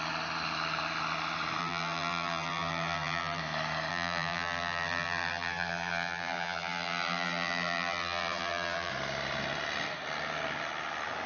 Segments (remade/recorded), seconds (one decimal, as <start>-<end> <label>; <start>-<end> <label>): 0.0-1.6 recorded; 1.6-3.4 remade; 3.4-3.9 recorded; 3.9-8.9 remade; 8.9-11.3 recorded